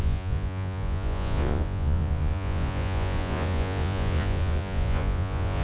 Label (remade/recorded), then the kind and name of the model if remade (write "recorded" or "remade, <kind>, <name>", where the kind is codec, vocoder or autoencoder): remade, vocoder, Vocos